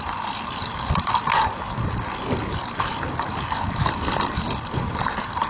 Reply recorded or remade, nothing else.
recorded